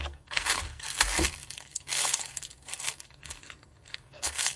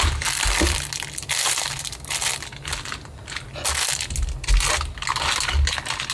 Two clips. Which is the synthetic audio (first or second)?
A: first